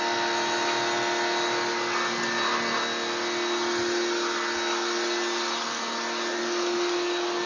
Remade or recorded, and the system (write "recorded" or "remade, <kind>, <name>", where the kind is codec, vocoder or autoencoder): recorded